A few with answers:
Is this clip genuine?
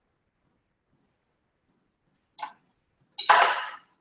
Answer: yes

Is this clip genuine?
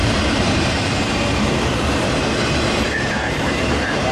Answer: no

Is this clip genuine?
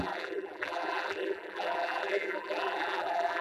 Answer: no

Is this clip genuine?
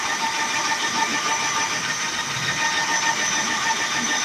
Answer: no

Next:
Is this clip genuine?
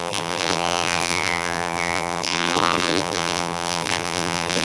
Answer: no